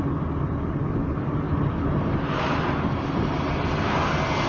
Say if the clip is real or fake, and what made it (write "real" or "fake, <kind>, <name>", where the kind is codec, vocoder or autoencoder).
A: real